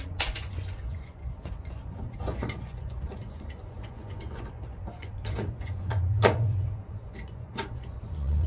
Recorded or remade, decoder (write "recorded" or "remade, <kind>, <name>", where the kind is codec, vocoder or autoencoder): remade, vocoder, Vocos